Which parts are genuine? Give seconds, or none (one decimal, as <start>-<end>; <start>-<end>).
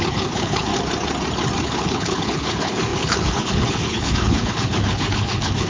0.7-1.7